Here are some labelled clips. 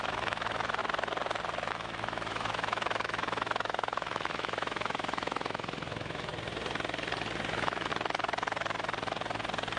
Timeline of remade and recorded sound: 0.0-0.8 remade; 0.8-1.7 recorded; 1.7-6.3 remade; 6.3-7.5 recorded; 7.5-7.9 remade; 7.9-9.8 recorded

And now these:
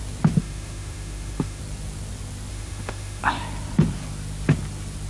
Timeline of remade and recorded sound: 0.0-0.4 recorded; 0.4-1.6 remade; 1.6-2.5 recorded; 2.5-3.2 remade; 3.2-5.1 recorded

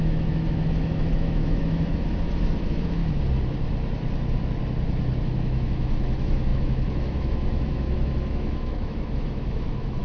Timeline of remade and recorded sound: 0.0-3.0 remade; 3.0-5.2 recorded; 5.2-10.0 remade

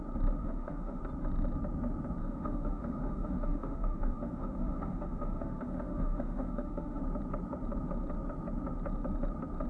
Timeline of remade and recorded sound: 0.0-0.4 recorded; 0.4-1.0 remade; 1.0-2.2 recorded; 2.2-7.0 remade; 7.0-9.7 recorded

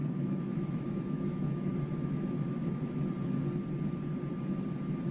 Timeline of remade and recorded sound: 0.0-3.1 remade; 3.1-5.1 recorded